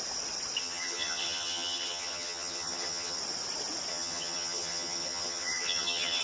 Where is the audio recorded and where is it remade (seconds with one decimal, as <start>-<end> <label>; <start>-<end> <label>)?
0.0-0.6 recorded; 0.6-3.2 remade; 3.2-3.9 recorded; 3.9-6.2 remade